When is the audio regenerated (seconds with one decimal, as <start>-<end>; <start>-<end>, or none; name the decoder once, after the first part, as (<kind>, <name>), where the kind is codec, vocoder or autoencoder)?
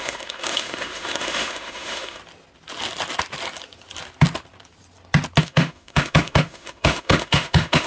0.0-2.2 (autoencoder, DAC-VAE); 5.4-7.9